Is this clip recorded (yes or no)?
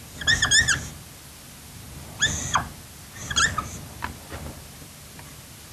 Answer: yes